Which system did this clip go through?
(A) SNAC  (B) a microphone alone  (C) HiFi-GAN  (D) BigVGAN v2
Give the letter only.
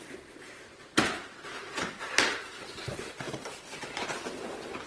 D